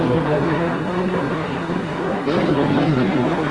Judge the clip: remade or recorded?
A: remade